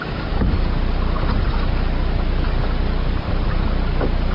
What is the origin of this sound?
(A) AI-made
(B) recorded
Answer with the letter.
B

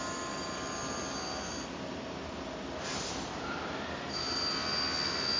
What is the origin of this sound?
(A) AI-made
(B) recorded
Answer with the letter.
B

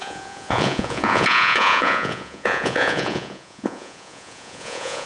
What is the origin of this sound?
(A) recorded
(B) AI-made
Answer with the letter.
B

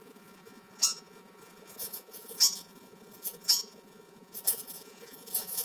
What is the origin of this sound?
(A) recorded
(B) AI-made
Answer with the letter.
B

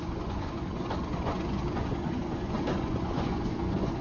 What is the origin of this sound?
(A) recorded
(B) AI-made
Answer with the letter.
B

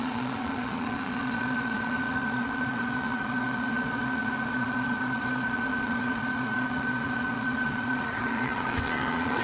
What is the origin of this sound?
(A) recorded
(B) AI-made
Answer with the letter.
B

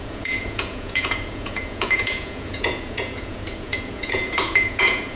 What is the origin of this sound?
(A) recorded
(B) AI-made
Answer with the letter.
B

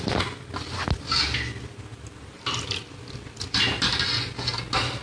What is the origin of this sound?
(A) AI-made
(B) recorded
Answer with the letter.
B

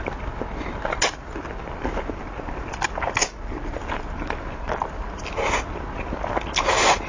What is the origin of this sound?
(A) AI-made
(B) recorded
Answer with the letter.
B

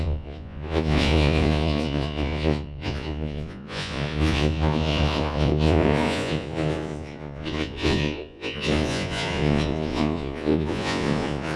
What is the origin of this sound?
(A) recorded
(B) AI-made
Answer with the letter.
B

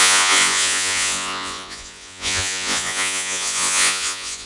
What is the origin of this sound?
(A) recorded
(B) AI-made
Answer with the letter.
B